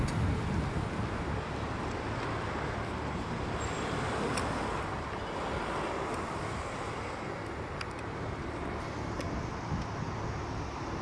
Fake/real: real